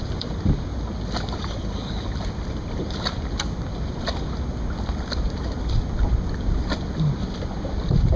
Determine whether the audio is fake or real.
real